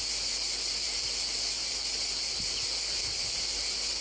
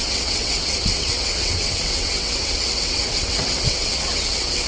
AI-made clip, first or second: second